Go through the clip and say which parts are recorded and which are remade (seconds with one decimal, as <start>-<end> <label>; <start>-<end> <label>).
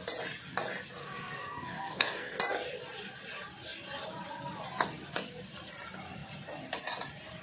0.0-1.0 recorded; 1.0-2.4 remade; 2.4-7.4 recorded